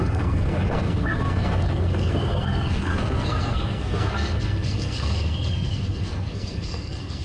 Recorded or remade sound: remade